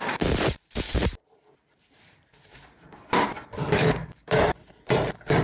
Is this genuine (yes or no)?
no